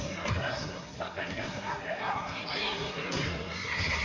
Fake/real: fake